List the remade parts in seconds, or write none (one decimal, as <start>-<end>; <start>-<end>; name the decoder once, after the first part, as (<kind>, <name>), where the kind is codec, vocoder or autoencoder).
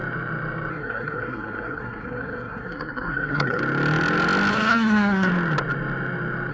0.7-3.6 (codec, SNAC); 4.5-5.3